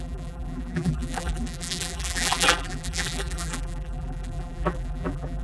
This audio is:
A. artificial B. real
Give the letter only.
A